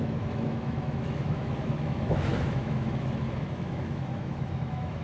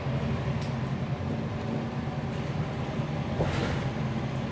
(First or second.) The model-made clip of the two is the first